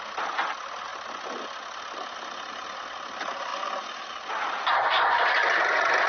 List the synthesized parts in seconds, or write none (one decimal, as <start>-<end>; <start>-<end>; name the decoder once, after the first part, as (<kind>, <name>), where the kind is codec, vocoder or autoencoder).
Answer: none